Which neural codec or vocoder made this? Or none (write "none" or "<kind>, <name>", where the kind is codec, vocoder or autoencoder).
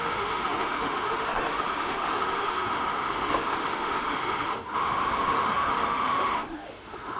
autoencoder, DAC-VAE